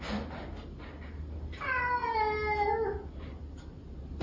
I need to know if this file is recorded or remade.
recorded